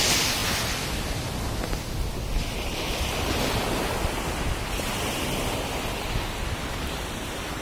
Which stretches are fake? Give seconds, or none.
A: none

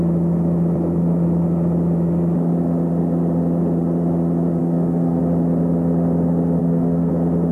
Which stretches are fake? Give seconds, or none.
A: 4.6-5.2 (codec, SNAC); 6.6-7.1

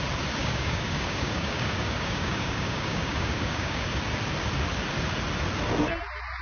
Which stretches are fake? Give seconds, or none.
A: 0.4-4.0 (codec, DAC)